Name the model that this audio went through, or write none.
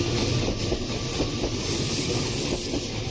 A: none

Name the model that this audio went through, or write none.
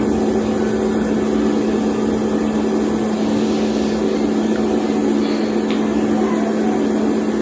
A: none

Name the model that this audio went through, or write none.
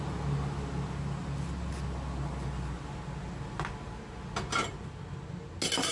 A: none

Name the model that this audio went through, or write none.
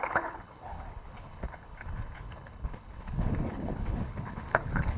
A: codec, HILCodec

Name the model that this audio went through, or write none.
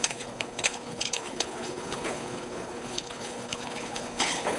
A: codec, HILCodec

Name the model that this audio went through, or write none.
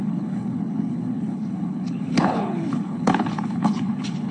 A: codec, HILCodec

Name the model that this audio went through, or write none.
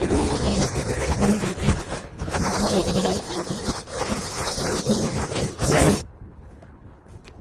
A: codec, HILCodec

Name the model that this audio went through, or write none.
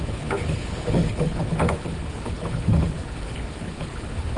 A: codec, HILCodec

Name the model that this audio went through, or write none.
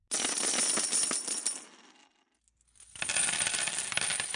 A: none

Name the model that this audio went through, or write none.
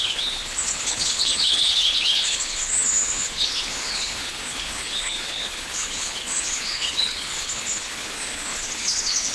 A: codec, HILCodec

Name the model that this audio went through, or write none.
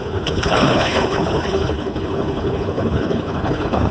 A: codec, HILCodec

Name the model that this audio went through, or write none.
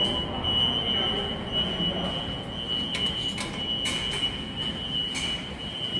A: none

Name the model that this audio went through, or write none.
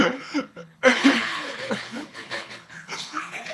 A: codec, HILCodec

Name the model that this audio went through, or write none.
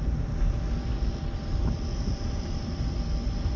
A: none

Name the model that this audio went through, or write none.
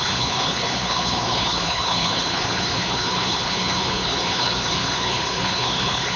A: codec, HILCodec